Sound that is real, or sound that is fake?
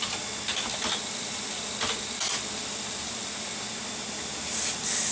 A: real